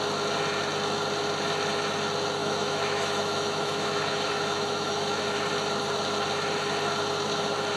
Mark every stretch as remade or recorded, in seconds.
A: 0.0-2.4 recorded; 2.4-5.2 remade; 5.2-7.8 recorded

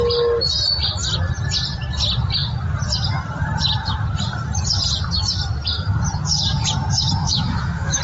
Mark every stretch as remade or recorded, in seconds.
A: 0.0-7.2 recorded; 7.2-8.0 remade

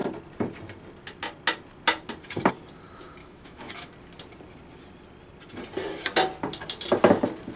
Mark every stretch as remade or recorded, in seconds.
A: 0.0-3.2 recorded; 3.2-3.9 remade; 3.9-7.6 recorded

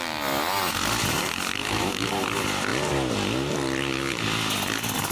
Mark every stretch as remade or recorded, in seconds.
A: 0.0-1.6 recorded; 1.6-2.1 remade; 2.1-5.1 recorded

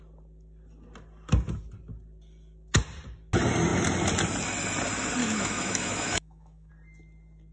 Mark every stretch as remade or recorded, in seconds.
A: 0.0-5.2 recorded; 5.2-6.7 remade; 6.7-7.5 recorded

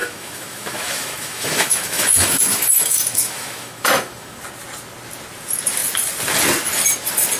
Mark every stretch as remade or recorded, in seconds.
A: 0.0-4.4 remade; 4.4-7.4 recorded

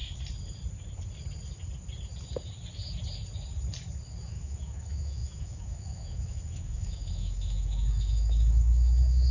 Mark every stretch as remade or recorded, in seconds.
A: 0.0-4.2 recorded; 4.2-9.3 remade